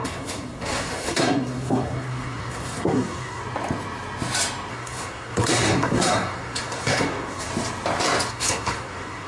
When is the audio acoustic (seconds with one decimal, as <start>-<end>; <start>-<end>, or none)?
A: 3.4-4.7; 7.5-8.3